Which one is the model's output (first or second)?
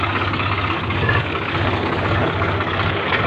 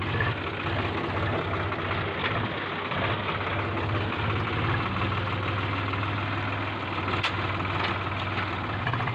first